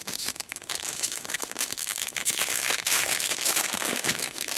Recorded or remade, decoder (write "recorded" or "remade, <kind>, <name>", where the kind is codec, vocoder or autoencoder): remade, autoencoder, DAC-VAE